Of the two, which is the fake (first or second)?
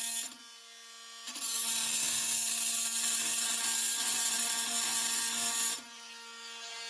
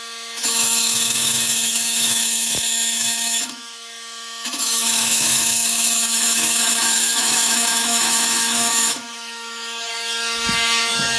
second